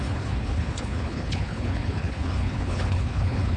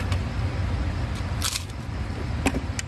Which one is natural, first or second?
second